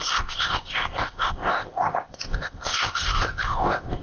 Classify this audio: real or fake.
fake